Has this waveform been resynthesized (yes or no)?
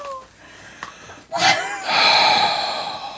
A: no